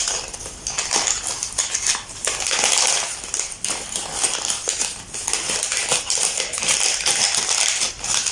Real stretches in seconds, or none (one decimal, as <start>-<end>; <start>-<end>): 0.0-8.3